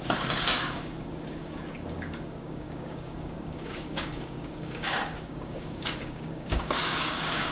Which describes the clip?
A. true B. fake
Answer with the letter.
B